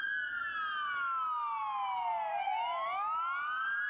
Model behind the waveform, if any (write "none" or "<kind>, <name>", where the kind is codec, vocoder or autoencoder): none